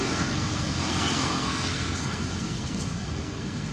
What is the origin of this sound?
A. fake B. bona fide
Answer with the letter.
A